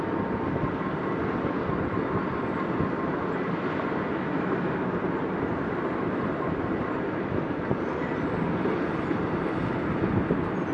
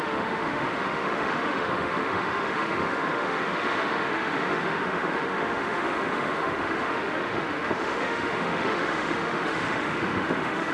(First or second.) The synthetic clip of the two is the second